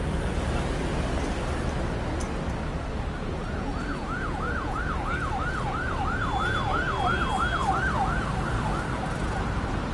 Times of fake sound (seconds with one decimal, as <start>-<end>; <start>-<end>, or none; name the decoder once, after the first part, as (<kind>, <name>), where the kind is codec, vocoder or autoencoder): 3.7-4.8 (vocoder, Vocos)